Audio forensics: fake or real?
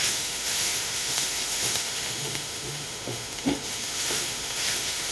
fake